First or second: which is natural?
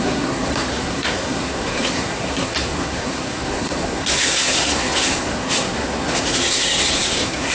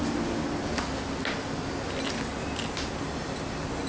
second